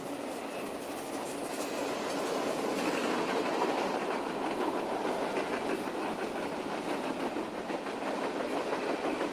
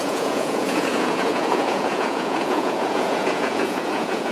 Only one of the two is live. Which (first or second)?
first